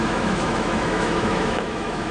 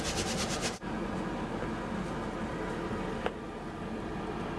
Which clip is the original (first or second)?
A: second